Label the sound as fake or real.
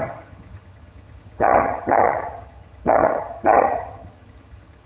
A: fake